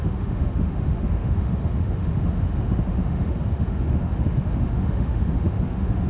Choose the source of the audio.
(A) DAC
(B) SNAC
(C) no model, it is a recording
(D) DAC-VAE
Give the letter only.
D